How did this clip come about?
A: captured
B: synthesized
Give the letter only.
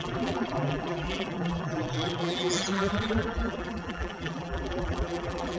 B